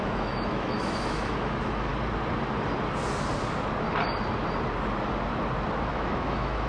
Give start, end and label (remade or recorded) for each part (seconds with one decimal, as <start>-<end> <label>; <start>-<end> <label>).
0.0-1.9 remade; 1.9-5.9 recorded; 5.9-6.7 remade